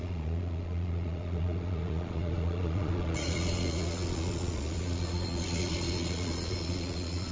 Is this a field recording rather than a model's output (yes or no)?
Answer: no